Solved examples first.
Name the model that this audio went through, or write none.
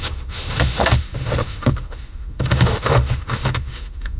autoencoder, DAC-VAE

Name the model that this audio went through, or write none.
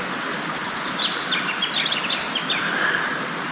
none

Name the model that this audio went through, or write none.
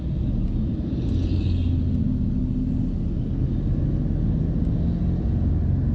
none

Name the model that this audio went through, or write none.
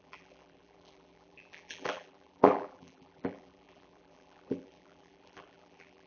vocoder, BigVGAN v2